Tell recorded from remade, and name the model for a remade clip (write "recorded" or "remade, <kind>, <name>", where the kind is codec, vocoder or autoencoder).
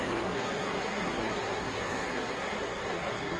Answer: remade, codec, SNAC